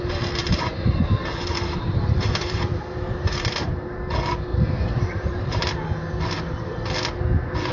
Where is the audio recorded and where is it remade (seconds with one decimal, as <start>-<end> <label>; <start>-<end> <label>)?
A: 0.0-0.4 recorded; 0.4-3.7 remade; 3.7-4.5 recorded; 4.5-5.6 remade; 5.6-7.7 recorded